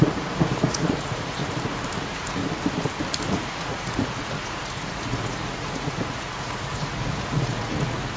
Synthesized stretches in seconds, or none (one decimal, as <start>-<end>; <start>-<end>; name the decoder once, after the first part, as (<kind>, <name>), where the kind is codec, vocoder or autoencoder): 0.0-1.4 (vocoder, Vocos); 2.0-2.4; 3.3-8.2

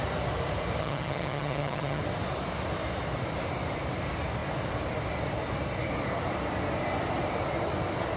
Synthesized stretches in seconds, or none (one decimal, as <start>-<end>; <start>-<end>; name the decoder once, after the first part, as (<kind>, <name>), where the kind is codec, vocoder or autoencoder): 0.8-2.0 (vocoder, HiFi-GAN)

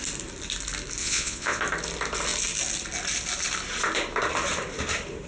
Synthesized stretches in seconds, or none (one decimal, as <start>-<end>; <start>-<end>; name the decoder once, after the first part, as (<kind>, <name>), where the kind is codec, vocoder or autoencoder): 1.0-1.6 (vocoder, Vocos)

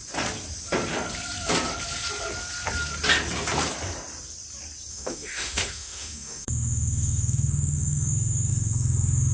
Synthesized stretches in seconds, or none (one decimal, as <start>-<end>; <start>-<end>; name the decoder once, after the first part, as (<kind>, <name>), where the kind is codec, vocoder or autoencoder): 4.9-9.3 (autoencoder, DAC-VAE)

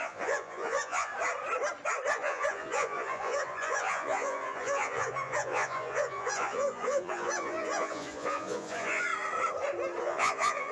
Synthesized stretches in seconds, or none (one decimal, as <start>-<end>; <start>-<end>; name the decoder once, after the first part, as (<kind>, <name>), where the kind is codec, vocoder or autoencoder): 0.0-1.1 (vocoder, Vocos); 2.1-9.1; 10.0-10.7

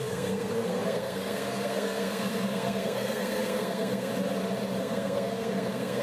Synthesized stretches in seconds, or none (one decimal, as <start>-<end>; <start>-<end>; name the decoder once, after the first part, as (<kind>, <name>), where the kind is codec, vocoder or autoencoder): 0.0-4.1 (codec, SNAC); 4.8-6.0